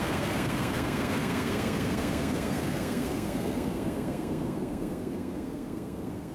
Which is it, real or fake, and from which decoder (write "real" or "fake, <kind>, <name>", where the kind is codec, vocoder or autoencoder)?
fake, codec, SNAC